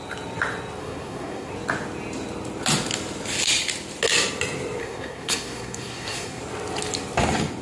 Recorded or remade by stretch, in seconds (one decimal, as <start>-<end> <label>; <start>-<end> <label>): 0.0-0.8 recorded; 0.8-1.5 remade; 1.5-4.8 recorded; 4.8-6.4 remade; 6.4-7.6 recorded